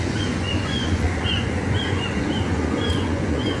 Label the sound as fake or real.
fake